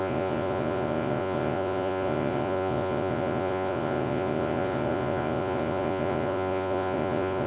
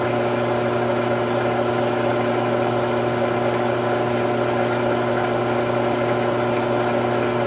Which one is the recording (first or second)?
second